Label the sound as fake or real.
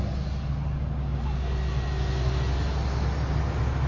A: real